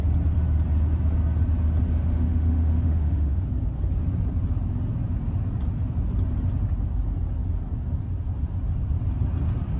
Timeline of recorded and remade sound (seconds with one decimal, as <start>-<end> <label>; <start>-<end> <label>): 0.0-2.0 recorded; 2.0-3.4 remade; 3.4-9.8 recorded